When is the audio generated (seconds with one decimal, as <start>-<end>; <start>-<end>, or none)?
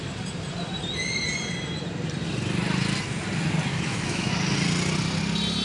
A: 3.7-4.3